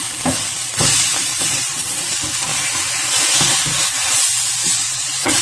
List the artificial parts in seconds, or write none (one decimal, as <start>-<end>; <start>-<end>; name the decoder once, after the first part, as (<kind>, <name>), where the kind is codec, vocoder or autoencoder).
1.3-2.0 (vocoder, WaveNeXt); 4.6-5.4